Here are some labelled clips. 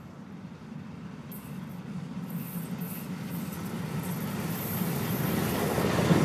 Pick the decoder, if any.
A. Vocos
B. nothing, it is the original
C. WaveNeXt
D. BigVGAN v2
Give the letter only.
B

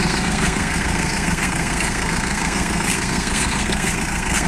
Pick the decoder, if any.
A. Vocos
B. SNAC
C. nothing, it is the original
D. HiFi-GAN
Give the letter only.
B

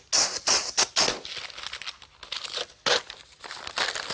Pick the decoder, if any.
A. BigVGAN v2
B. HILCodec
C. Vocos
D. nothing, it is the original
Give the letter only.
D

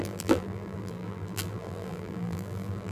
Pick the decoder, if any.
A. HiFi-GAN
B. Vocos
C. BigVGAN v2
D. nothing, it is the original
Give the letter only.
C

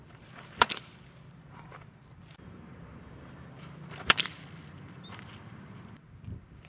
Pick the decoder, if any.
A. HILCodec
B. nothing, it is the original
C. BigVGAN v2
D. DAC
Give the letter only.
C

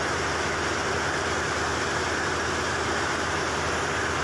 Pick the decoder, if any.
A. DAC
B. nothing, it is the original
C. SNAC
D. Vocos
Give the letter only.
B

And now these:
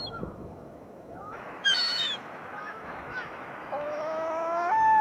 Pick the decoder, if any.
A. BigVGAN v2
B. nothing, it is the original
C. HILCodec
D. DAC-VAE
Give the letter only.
D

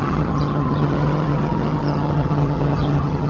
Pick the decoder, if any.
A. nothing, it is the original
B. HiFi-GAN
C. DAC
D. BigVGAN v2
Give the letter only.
B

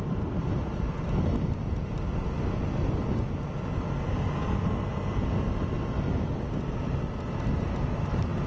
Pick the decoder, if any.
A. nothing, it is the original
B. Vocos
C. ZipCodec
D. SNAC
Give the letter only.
A